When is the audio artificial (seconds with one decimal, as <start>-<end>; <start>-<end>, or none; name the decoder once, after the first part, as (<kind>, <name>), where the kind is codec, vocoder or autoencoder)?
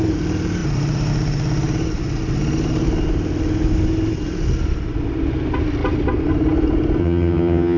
7.0-7.8 (vocoder, HiFi-GAN)